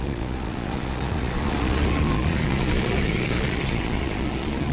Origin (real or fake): fake